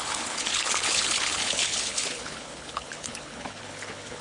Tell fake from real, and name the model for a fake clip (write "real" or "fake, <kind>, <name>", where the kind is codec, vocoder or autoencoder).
fake, codec, HILCodec